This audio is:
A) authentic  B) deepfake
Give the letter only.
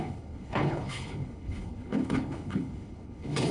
B